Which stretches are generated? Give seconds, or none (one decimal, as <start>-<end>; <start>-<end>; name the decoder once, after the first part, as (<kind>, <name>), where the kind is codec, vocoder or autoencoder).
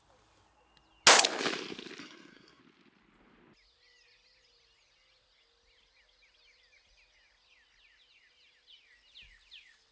2.0-2.6 (codec, SNAC)